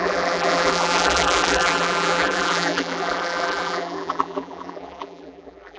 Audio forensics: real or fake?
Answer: fake